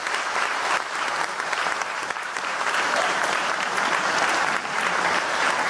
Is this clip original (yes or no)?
no